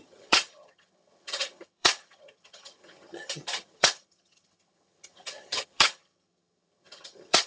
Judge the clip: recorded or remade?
remade